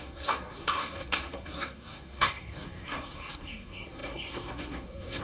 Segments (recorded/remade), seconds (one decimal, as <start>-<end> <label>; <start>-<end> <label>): 0.0-5.2 remade